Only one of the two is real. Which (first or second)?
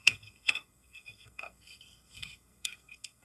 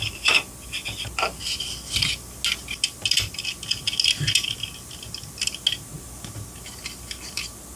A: second